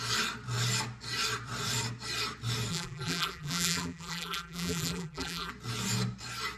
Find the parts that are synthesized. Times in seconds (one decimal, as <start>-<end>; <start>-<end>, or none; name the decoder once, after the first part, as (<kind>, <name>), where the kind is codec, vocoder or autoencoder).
2.7-5.5 (vocoder, BigVGAN v2)